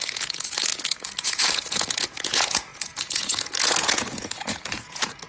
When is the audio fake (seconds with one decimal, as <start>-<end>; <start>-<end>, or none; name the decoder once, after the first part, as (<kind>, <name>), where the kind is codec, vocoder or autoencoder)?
0.0-5.3 (vocoder, Vocos)